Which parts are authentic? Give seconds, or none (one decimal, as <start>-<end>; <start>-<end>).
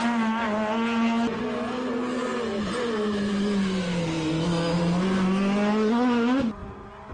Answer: 0.0-7.1